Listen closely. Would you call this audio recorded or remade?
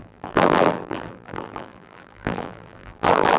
remade